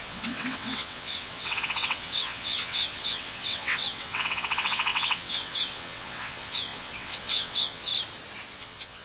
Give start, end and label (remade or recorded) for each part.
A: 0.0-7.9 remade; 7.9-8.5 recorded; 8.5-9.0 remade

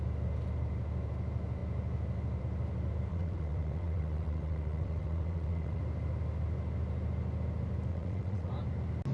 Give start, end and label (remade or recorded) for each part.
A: 0.0-3.1 recorded; 3.1-5.8 remade; 5.8-7.9 recorded; 7.9-8.5 remade; 8.5-9.1 recorded

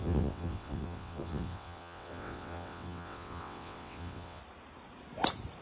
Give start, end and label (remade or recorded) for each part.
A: 0.0-4.4 remade; 4.4-5.6 recorded